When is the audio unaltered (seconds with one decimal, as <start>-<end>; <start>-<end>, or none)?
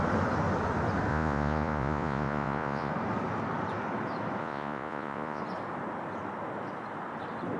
0.0-1.1; 2.9-4.4; 5.4-7.6